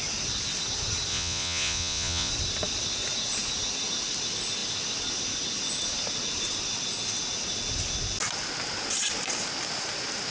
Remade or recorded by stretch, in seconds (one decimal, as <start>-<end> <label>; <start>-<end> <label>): 0.0-1.1 recorded; 1.1-2.3 remade; 2.3-10.3 recorded